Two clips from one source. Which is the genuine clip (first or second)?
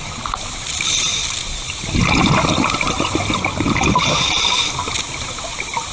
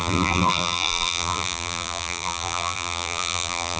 first